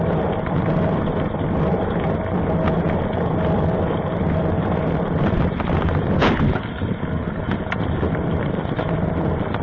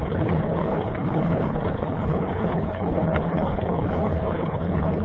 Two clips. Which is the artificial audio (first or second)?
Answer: second